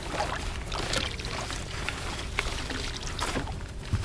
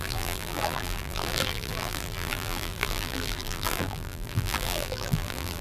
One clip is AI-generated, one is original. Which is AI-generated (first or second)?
second